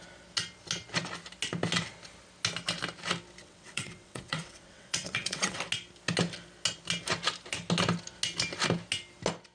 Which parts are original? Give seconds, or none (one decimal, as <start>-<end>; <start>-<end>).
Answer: 0.0-3.4; 5.6-9.5